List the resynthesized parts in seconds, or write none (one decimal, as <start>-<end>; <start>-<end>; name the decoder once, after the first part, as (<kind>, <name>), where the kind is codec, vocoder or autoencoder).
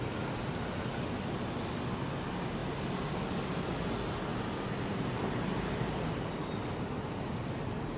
none